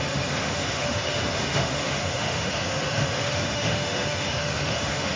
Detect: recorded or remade remade